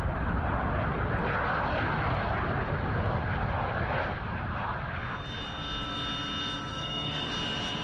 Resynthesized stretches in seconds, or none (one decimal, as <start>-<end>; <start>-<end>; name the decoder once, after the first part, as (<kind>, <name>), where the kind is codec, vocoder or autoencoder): 6.7-7.3 (codec, SNAC)